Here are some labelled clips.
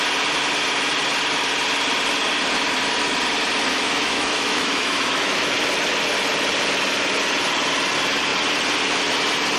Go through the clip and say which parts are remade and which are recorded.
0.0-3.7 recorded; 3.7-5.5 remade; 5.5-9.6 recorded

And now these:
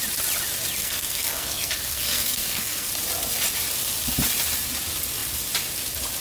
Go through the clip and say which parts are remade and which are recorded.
0.0-0.8 recorded; 0.8-2.9 remade; 2.9-6.2 recorded

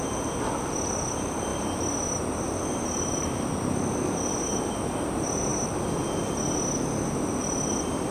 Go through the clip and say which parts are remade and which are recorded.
0.0-5.5 remade; 5.5-6.6 recorded; 6.6-8.1 remade

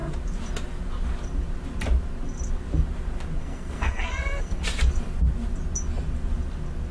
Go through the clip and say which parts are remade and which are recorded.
0.0-3.4 recorded; 3.4-4.6 remade; 4.6-6.9 recorded